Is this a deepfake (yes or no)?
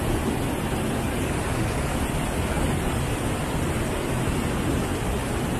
no